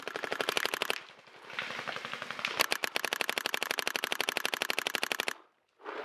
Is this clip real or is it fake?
real